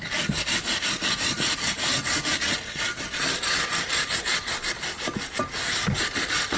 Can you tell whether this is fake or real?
real